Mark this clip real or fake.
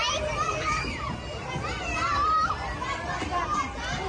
real